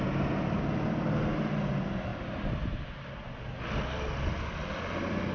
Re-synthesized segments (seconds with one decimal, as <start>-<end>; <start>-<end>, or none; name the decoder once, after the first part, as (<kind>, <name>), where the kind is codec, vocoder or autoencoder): none